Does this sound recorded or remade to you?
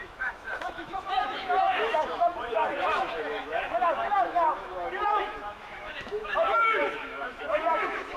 remade